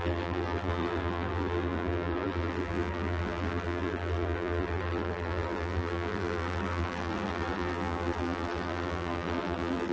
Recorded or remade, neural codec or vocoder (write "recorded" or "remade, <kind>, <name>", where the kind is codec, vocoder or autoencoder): remade, vocoder, BigVGAN v2